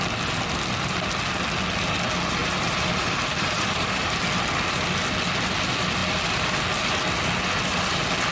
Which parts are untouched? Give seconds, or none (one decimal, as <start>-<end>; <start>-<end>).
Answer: 0.0-2.4; 4.2-8.3